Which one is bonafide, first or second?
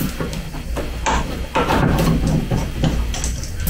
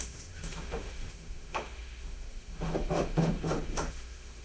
first